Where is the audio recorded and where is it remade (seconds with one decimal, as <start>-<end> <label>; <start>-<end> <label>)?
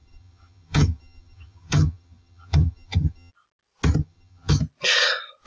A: 0.0-3.3 remade; 3.3-4.0 recorded; 4.0-4.6 remade; 4.6-5.5 recorded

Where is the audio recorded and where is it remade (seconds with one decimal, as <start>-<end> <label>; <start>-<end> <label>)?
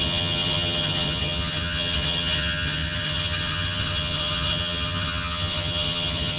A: 0.0-6.4 remade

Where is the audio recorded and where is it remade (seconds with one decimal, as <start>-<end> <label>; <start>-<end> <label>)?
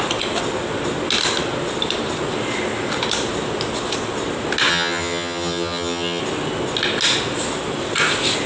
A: 0.0-4.7 recorded; 4.7-6.2 remade; 6.2-8.5 recorded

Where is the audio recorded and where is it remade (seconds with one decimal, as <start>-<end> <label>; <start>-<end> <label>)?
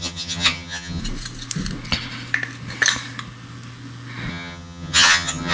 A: 0.0-1.0 remade; 1.0-4.3 recorded; 4.3-5.5 remade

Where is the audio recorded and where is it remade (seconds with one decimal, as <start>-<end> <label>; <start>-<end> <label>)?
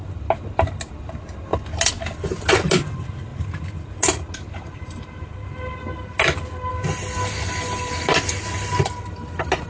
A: 0.0-9.7 recorded